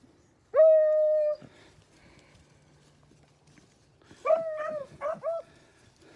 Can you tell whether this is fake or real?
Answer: real